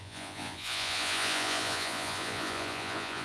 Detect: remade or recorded remade